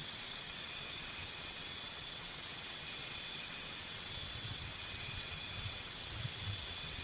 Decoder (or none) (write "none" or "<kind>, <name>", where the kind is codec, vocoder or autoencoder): vocoder, WaveNeXt